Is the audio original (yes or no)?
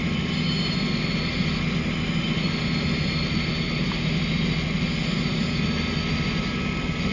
yes